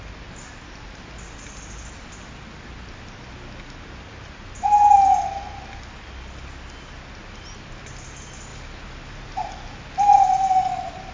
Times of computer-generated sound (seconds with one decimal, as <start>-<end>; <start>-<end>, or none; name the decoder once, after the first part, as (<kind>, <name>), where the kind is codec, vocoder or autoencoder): none